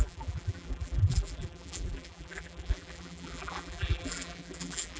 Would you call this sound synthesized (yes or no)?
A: yes